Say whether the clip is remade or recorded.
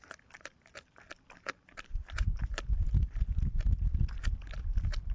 recorded